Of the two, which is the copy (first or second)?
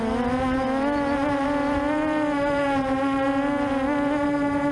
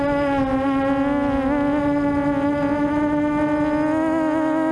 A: first